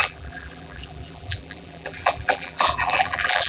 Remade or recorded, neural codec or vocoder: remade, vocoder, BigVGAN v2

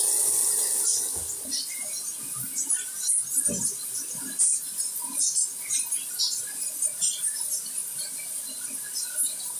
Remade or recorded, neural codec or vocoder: recorded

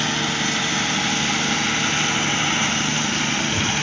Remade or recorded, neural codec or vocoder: recorded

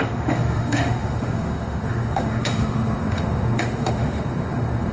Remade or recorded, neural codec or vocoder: remade, autoencoder, DAC-VAE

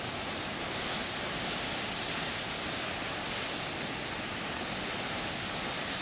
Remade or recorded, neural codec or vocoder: recorded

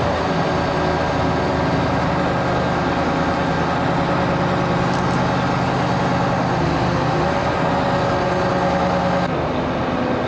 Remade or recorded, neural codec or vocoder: recorded